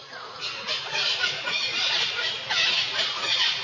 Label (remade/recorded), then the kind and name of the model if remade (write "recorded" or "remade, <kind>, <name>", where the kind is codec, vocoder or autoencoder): remade, vocoder, Vocos